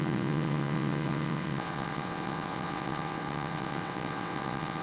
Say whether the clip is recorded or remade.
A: remade